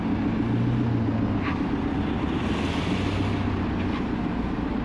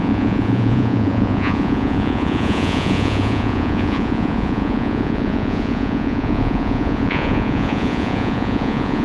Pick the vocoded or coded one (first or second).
second